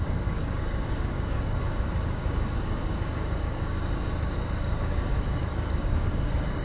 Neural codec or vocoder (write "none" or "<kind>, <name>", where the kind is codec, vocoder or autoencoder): codec, DAC